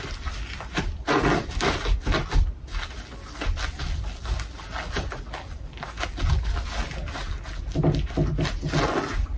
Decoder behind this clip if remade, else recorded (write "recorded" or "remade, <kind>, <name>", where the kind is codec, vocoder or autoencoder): recorded